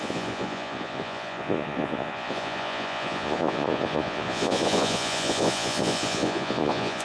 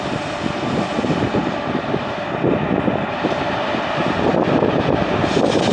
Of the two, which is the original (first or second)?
second